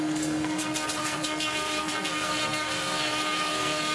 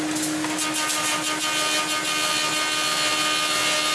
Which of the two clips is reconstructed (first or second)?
first